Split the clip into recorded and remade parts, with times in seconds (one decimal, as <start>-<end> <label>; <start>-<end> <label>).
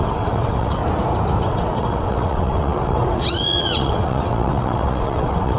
0.0-0.8 remade; 0.8-1.4 recorded; 1.4-5.6 remade